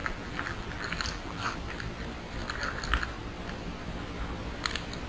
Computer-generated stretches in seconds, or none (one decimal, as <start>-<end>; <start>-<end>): 0.0-1.5